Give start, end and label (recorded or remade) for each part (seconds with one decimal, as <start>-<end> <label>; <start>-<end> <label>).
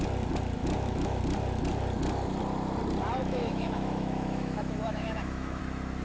0.0-0.6 recorded; 0.6-1.2 remade; 1.2-3.2 recorded; 3.2-5.6 remade; 5.6-6.0 recorded